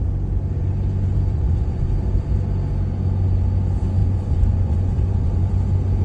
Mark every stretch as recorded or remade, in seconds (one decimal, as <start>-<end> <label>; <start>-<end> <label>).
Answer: 0.0-1.3 recorded; 1.3-1.9 remade; 1.9-4.0 recorded; 4.0-5.5 remade; 5.5-6.0 recorded